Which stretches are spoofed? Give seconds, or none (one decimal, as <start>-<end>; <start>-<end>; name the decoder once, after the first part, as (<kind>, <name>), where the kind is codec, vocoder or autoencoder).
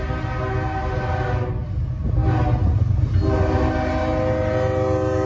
none